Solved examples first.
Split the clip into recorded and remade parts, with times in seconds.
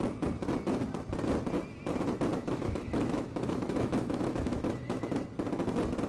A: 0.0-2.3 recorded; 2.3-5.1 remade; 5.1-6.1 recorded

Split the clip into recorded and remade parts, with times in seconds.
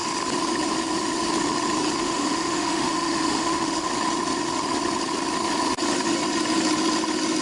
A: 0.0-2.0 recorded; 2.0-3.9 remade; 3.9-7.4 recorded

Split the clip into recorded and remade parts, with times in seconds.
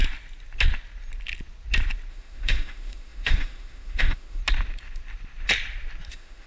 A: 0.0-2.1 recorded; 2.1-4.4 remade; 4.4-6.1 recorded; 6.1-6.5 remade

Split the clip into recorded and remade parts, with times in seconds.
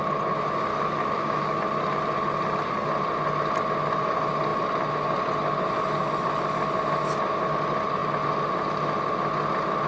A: 0.0-0.7 recorded; 0.7-1.6 remade; 1.6-9.9 recorded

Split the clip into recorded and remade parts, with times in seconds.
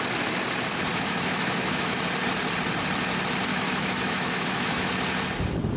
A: 0.0-0.9 recorded; 0.9-2.0 remade; 2.0-3.5 recorded; 3.5-4.9 remade; 4.9-5.8 recorded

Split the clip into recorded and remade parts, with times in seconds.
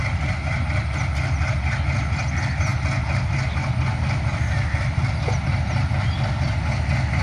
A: 0.0-7.2 recorded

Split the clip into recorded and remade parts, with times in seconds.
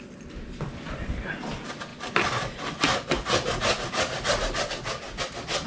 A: 0.0-5.7 recorded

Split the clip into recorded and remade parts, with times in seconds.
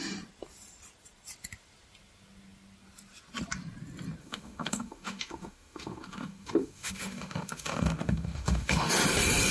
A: 0.0-4.2 recorded; 4.2-8.9 remade; 8.9-9.5 recorded